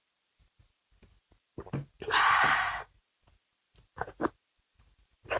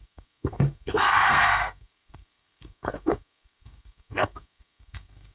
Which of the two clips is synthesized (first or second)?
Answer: second